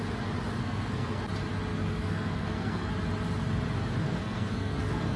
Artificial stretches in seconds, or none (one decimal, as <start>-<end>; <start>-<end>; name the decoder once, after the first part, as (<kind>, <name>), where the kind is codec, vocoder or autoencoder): 0.6-1.2 (codec, SNAC); 1.7-2.9; 4.0-5.2